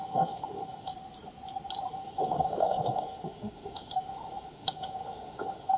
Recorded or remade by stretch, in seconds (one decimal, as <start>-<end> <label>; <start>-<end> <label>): 0.0-0.9 remade; 0.9-1.9 recorded; 1.9-5.8 remade